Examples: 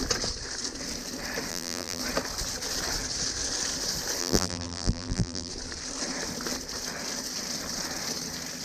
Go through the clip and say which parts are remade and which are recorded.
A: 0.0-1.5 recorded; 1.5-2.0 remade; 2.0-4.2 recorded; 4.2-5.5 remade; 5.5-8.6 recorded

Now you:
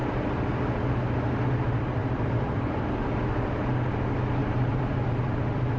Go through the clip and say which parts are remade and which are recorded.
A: 0.0-2.0 recorded; 2.0-2.8 remade; 2.8-4.4 recorded; 4.4-5.8 remade

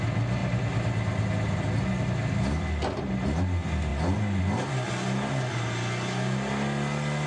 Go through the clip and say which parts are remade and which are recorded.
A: 0.0-7.3 recorded

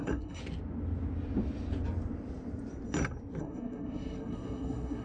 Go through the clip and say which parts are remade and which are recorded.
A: 0.0-0.4 remade; 0.4-3.4 recorded; 3.4-5.0 remade